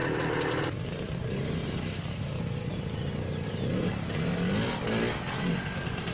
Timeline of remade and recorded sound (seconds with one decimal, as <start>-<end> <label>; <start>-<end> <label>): 0.0-0.7 remade; 0.7-1.6 recorded; 1.6-2.3 remade; 2.3-3.7 recorded; 3.7-5.5 remade; 5.5-6.1 recorded